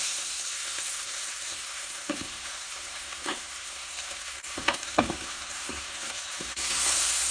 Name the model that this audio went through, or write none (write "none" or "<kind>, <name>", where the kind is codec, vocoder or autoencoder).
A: codec, SNAC